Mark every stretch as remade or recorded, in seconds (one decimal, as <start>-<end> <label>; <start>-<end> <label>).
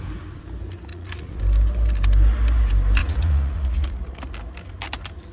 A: 0.0-0.9 recorded; 0.9-1.4 remade; 1.4-3.0 recorded; 3.0-4.2 remade; 4.2-5.3 recorded